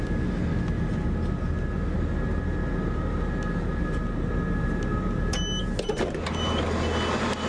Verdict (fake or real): real